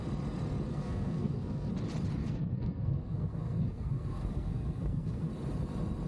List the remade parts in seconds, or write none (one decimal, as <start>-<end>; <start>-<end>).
0.7-1.7; 2.2-5.3